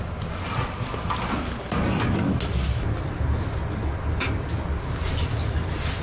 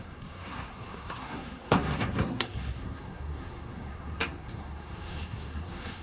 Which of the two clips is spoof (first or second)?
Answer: second